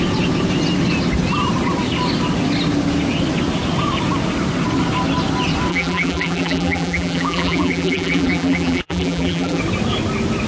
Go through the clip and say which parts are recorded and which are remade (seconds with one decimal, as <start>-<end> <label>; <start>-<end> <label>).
0.0-5.7 recorded; 5.7-9.6 remade; 9.6-10.5 recorded